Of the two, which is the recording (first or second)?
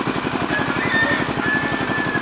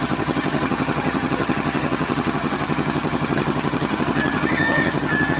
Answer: first